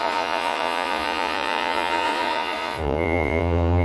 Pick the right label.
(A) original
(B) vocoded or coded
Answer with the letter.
B